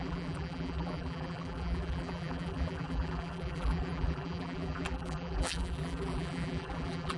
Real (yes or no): no